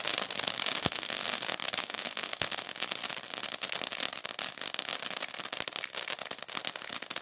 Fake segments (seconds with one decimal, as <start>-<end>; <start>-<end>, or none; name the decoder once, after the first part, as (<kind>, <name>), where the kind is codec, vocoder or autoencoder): 0.8-1.4 (autoencoder, DAC-VAE); 1.8-2.7